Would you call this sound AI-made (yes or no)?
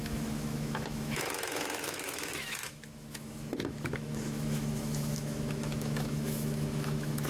yes